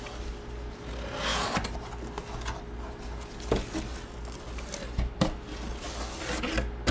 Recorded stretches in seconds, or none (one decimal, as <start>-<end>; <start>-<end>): 0.0-6.9